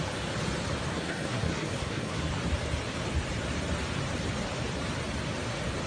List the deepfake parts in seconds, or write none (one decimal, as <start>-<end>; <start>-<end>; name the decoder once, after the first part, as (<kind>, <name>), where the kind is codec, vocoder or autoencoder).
0.9-2.3 (codec, SNAC)